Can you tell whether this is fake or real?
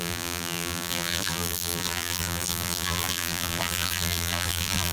fake